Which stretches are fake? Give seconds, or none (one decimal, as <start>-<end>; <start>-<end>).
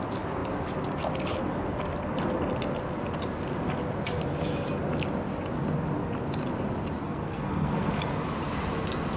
7.0-7.9